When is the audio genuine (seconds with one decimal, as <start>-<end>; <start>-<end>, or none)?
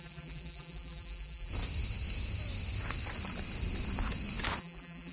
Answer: 1.5-4.6